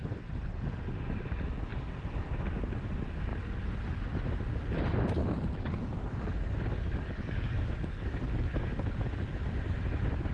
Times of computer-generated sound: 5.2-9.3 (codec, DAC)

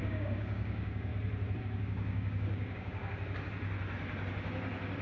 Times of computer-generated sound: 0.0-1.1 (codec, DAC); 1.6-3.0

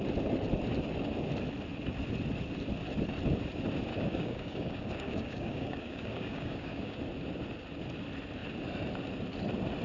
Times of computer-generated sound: 3.9-7.0 (codec, DAC)

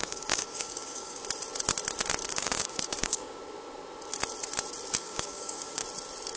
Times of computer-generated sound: 0.0-1.2 (codec, DAC); 2.3-3.4; 5.0-5.8

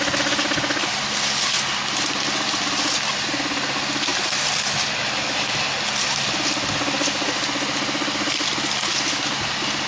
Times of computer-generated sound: none

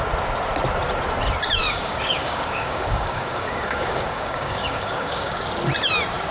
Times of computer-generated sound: 1.6-5.4 (codec, DAC)

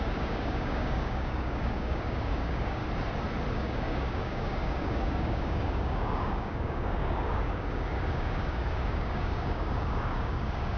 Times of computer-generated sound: 0.0-2.8 (codec, DAC); 3.5-10.8

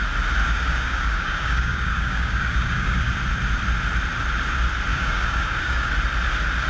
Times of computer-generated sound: 0.4-3.1 (codec, DAC); 4.9-5.9